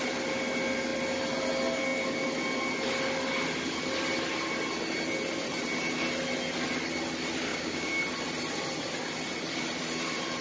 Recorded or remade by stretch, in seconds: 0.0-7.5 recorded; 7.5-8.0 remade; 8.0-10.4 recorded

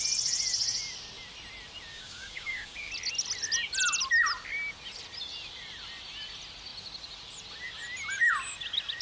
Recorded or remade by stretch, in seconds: 0.0-1.9 recorded; 1.9-2.9 remade; 2.9-9.0 recorded

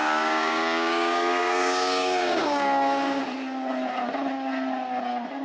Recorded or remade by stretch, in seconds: 0.0-3.2 remade; 3.2-5.4 recorded

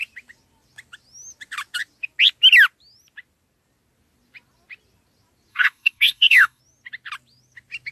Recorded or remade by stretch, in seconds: 0.0-5.5 recorded; 5.5-6.6 remade; 6.6-7.9 recorded

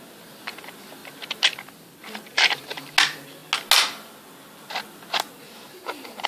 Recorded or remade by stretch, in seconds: 0.0-6.3 recorded

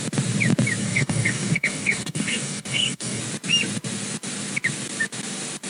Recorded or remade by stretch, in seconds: 0.0-0.8 recorded; 0.8-3.2 remade; 3.2-5.7 recorded

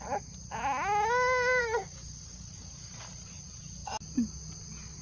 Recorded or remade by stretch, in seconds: 0.0-1.6 recorded; 1.6-2.7 remade; 2.7-5.0 recorded

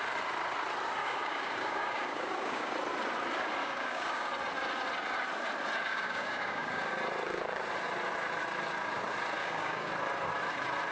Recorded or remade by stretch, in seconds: 0.0-1.0 recorded; 1.0-2.7 remade; 2.7-3.6 recorded; 3.6-4.3 remade; 4.3-5.9 recorded; 5.9-6.9 remade; 6.9-9.4 recorded; 9.4-9.9 remade; 9.9-10.9 recorded